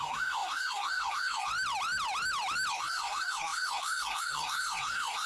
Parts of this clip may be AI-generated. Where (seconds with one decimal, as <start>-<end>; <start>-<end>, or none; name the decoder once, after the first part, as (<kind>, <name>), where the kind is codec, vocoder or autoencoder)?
0.0-1.5 (codec, SNAC); 2.7-5.3

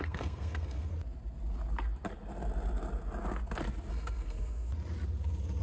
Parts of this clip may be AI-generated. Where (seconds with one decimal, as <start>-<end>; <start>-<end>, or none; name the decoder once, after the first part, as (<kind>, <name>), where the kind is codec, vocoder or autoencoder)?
0.0-0.9 (codec, SNAC); 3.9-4.7

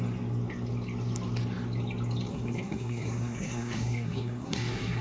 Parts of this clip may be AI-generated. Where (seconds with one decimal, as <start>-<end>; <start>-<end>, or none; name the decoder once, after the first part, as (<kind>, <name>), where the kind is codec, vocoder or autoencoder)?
2.3-5.0 (codec, SNAC)

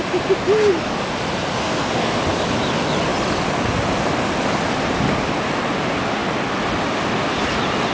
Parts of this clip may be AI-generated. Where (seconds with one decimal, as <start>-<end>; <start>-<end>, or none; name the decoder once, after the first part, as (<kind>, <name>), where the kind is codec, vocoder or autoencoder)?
1.6-2.2 (codec, SNAC)

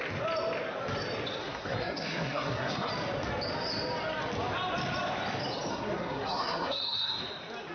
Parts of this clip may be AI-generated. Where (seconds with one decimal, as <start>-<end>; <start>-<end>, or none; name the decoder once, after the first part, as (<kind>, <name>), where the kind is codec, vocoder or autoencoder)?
1.4-2.9 (codec, SNAC); 5.7-7.2